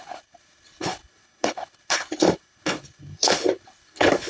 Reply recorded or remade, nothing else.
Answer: remade